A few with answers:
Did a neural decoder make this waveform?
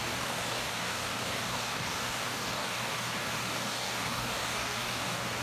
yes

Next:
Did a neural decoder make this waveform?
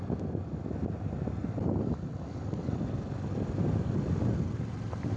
no